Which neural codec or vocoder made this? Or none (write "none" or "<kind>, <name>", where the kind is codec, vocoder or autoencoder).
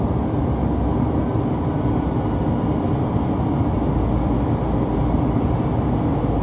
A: none